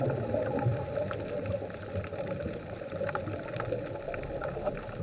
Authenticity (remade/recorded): recorded